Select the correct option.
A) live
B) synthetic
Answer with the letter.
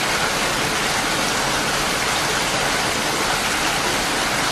A